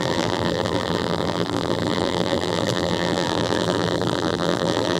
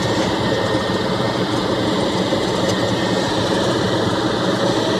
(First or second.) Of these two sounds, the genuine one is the second